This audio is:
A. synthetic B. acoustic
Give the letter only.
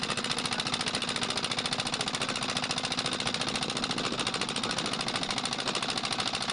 B